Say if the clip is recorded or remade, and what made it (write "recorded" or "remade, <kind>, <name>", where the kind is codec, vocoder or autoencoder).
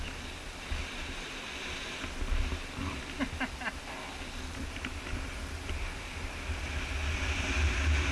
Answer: recorded